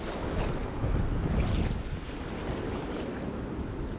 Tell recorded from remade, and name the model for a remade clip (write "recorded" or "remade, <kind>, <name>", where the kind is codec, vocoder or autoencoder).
recorded